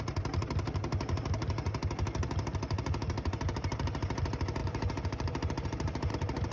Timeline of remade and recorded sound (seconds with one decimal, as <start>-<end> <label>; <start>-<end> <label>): 0.0-4.6 recorded; 4.6-6.1 remade; 6.1-6.5 recorded